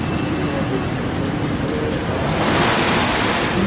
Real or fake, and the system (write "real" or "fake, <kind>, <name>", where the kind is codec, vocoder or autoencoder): real